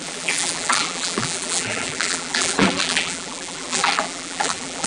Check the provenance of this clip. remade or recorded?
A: remade